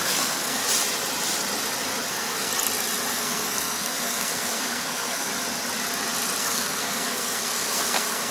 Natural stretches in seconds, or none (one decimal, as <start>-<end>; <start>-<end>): 0.6-2.1; 2.5-3.1; 5.3-6.4